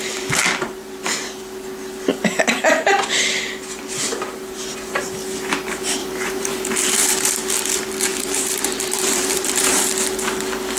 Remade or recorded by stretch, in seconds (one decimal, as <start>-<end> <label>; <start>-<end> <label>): 0.0-6.0 recorded; 6.0-7.3 remade; 7.3-8.1 recorded; 8.1-9.8 remade; 9.8-10.8 recorded